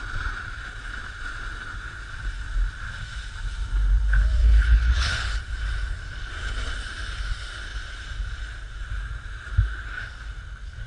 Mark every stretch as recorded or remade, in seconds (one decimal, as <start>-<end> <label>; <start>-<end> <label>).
0.0-4.4 recorded; 4.4-5.4 remade; 5.4-10.9 recorded